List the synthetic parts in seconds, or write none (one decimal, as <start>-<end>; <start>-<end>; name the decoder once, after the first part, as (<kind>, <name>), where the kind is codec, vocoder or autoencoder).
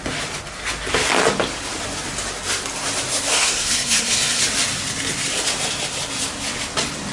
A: 3.3-4.4 (codec, SNAC)